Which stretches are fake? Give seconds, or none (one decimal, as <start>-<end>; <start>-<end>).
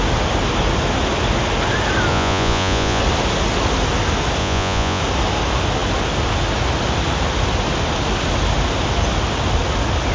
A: 2.1-3.0; 4.4-5.0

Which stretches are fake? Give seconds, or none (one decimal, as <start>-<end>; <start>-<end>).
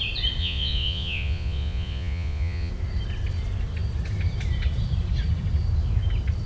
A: 0.4-2.7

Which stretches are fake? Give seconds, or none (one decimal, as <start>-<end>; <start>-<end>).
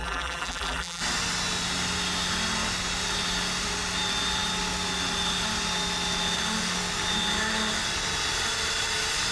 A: 0.0-1.0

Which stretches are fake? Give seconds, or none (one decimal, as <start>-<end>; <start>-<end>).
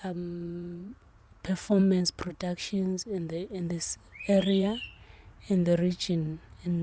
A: 0.0-1.8; 2.3-6.8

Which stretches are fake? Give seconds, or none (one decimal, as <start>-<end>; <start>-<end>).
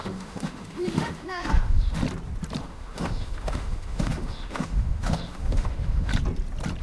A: 0.0-2.0; 2.6-6.1